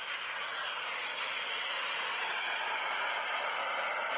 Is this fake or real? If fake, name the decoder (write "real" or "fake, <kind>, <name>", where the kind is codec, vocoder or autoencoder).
real